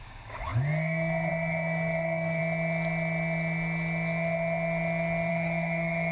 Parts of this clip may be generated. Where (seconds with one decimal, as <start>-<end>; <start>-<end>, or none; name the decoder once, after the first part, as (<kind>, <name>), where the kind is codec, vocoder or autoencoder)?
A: 0.0-2.4 (codec, DAC); 5.3-6.1